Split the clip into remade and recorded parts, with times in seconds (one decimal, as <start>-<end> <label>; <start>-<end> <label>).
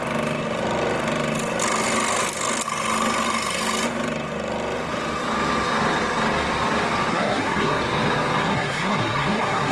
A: 0.0-7.1 recorded; 7.1-7.8 remade; 7.8-8.4 recorded; 8.4-9.7 remade